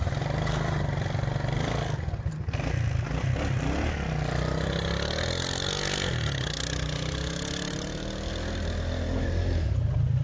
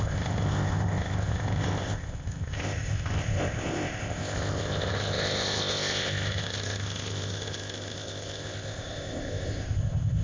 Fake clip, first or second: second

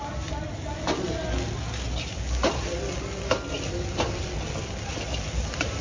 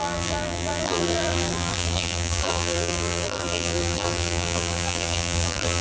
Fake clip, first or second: second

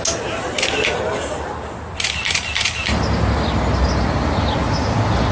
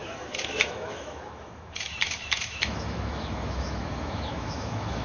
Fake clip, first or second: second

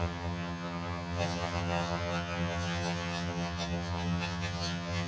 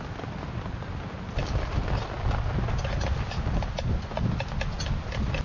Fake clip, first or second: first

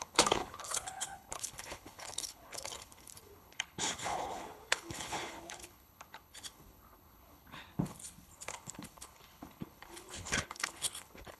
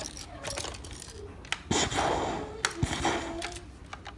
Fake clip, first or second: first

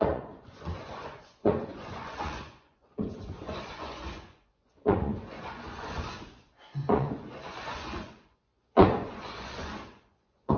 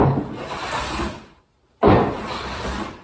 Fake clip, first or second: first